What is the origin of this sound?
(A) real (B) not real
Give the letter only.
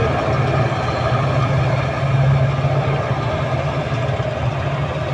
A